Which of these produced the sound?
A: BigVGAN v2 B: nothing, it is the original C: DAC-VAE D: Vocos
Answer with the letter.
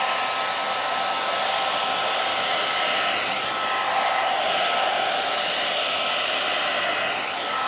B